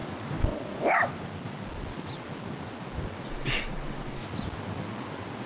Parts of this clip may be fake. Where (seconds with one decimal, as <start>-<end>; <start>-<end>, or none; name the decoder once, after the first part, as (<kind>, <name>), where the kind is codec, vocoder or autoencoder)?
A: 3.3-4.2 (vocoder, Vocos)

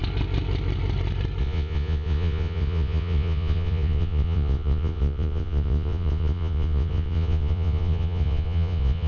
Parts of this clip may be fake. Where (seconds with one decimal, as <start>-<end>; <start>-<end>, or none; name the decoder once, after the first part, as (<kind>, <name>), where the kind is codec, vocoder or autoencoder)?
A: 1.4-9.1 (vocoder, Vocos)

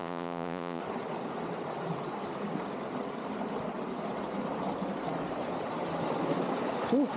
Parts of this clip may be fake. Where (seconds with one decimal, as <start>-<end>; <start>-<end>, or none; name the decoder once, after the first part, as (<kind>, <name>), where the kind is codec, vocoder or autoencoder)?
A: 0.0-0.8 (vocoder, Vocos)

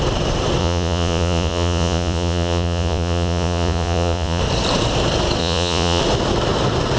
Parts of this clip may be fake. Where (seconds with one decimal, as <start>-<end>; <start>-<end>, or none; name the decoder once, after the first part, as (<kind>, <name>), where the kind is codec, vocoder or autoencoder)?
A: 0.6-4.4 (vocoder, Vocos); 5.4-6.0